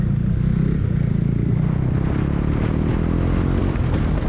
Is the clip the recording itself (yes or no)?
yes